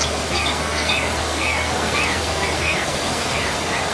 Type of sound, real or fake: fake